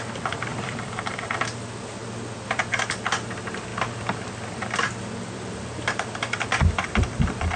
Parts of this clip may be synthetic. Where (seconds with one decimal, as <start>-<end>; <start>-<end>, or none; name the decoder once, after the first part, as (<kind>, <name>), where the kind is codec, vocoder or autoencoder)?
0.5-1.4 (vocoder, BigVGAN v2); 3.7-7.6